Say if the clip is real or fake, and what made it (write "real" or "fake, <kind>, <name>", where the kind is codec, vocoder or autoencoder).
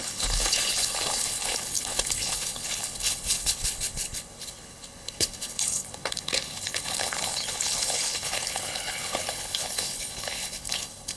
fake, codec, HILCodec